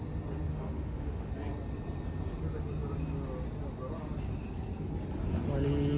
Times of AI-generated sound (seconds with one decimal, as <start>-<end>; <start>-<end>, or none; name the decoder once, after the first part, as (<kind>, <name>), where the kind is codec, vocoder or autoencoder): 0.5-1.3 (autoencoder, DAC-VAE)